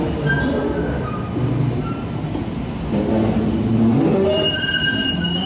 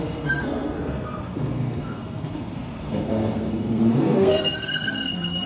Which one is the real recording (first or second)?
first